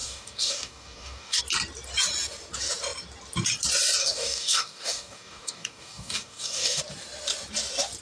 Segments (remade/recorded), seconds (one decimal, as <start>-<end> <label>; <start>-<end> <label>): 0.0-1.4 remade; 1.4-4.0 recorded; 4.0-6.8 remade; 6.8-8.0 recorded